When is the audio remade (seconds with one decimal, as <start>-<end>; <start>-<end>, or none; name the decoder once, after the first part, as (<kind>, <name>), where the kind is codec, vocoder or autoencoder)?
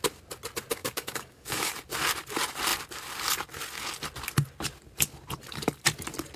0.8-1.7 (codec, DAC)